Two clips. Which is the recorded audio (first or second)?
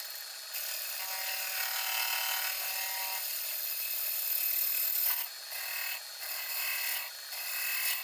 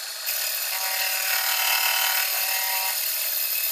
first